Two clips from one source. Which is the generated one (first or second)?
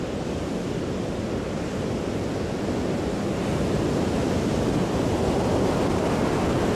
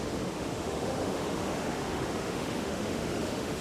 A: second